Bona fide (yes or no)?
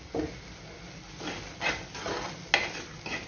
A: yes